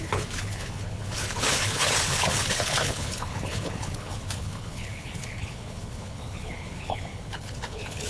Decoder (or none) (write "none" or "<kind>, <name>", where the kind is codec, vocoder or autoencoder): codec, HILCodec